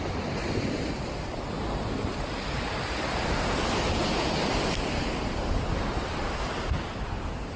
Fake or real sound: real